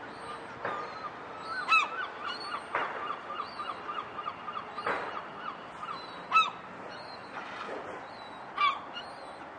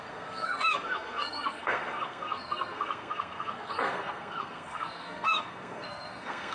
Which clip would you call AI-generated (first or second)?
second